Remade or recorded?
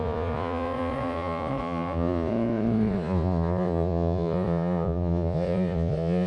remade